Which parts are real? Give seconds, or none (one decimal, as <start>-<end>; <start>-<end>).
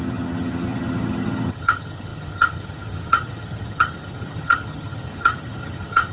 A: none